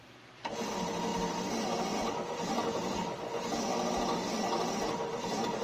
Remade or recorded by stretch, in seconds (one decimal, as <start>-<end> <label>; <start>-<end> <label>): 0.0-5.6 recorded